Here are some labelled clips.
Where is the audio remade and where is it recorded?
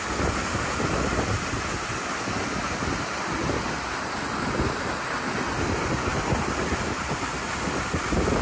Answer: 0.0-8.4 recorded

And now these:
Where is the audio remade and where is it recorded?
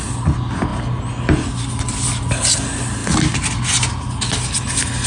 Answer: 0.0-5.1 recorded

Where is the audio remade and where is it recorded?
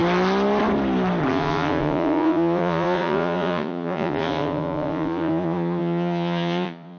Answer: 0.0-1.3 recorded; 1.3-7.0 remade